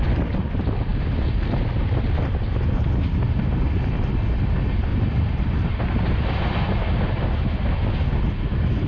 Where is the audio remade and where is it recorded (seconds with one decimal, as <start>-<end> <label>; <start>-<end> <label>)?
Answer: 0.0-8.9 recorded